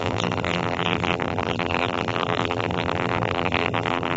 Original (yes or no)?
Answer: no